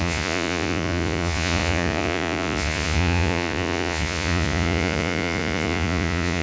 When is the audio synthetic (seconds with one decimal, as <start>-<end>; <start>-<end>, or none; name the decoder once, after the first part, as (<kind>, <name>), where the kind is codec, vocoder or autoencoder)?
0.0-6.4 (vocoder, Vocos)